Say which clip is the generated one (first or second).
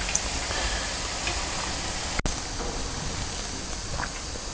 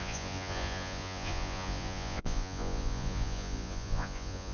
second